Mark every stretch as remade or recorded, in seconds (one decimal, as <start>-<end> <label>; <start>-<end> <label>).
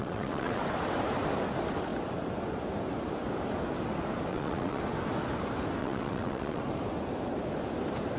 0.0-0.6 remade; 0.6-4.3 recorded; 4.3-4.8 remade; 4.8-5.8 recorded; 5.8-6.6 remade; 6.6-8.2 recorded